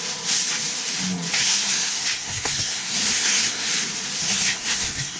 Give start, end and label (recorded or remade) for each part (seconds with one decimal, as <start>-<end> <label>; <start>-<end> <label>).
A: 0.0-1.4 recorded; 1.4-3.7 remade; 3.7-4.2 recorded; 4.2-5.2 remade